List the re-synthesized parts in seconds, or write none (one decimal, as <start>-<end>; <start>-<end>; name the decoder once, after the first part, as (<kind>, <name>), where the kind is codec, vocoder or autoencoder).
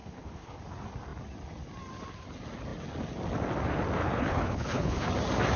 0.0-0.6 (codec, HILCodec); 4.0-5.1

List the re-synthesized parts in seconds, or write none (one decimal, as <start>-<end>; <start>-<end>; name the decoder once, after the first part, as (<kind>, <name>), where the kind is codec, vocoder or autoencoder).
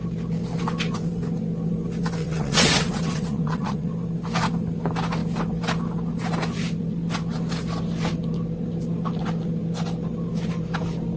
2.2-3.9 (vocoder, WaveNeXt)